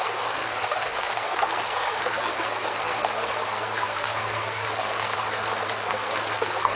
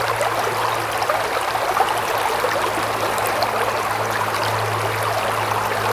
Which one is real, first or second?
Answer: second